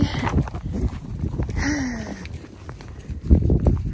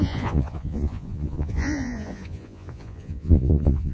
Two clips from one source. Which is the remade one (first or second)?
second